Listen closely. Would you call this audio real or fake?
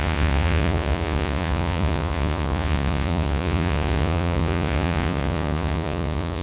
fake